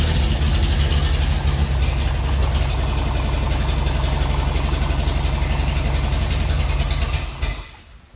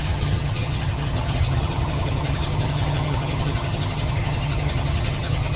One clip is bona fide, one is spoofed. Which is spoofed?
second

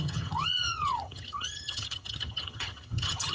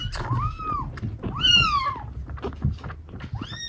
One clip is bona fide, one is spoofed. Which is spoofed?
first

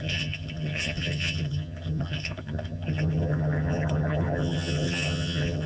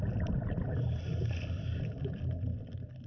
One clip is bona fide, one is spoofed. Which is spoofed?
first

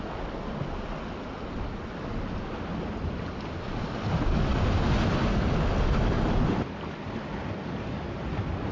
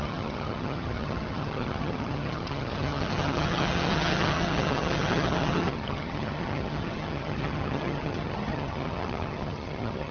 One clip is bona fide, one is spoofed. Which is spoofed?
second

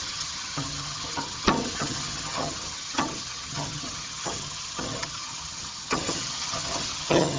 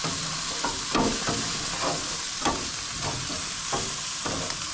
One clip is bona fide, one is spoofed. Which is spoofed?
first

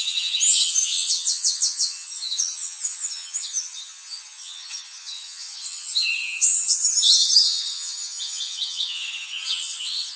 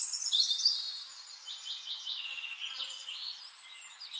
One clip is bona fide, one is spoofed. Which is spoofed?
first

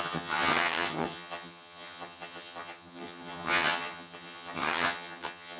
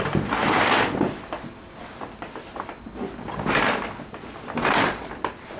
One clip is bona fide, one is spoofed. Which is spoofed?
first